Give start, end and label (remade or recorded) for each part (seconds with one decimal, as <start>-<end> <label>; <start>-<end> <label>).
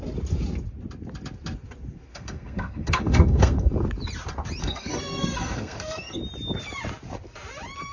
0.0-2.1 recorded; 2.1-3.7 remade; 3.7-4.6 recorded; 4.6-6.2 remade; 6.2-7.9 recorded